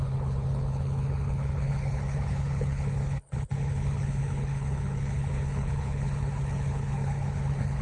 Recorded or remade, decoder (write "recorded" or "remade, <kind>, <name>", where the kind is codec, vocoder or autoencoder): remade, codec, HILCodec